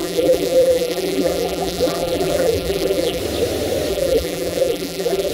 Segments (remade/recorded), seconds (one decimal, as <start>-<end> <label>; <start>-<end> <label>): 0.0-3.2 remade; 3.2-3.9 recorded; 3.9-5.3 remade